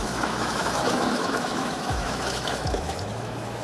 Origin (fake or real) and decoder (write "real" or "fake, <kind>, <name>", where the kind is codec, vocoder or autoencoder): fake, autoencoder, DAC-VAE